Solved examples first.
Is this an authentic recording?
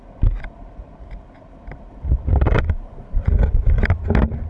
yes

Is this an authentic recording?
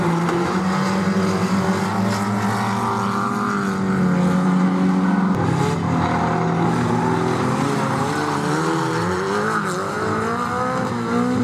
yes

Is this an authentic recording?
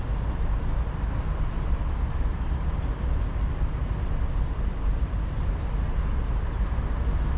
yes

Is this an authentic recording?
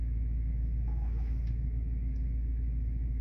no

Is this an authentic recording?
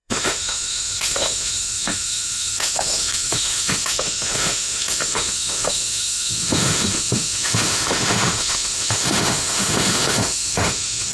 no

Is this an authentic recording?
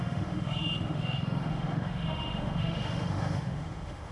no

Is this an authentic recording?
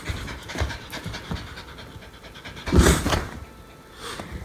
yes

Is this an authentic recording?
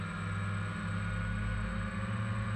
yes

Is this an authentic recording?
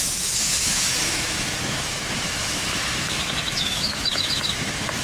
no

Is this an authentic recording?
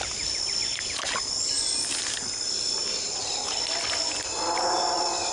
yes